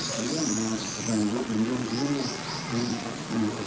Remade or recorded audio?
remade